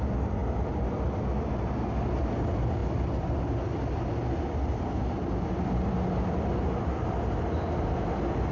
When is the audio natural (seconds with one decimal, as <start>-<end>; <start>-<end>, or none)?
0.0-8.5